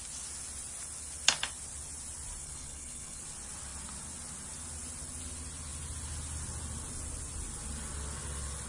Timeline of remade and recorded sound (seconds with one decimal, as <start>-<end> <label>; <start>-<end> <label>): 0.0-2.4 recorded; 2.4-3.2 remade; 3.2-8.7 recorded